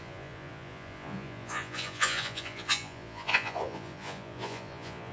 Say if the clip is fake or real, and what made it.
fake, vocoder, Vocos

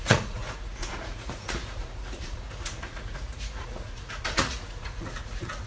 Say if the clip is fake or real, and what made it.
fake, vocoder, Vocos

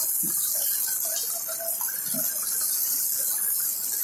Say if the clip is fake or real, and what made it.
real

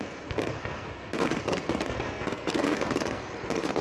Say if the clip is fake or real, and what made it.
fake, codec, SNAC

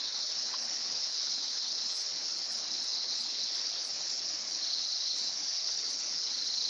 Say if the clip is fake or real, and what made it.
fake, codec, HILCodec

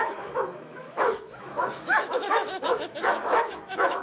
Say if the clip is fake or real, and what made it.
fake, autoencoder, DAC-VAE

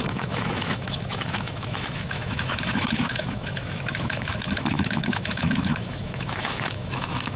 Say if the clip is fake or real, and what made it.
fake, autoencoder, DAC-VAE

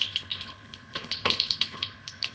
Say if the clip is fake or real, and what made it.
fake, codec, HILCodec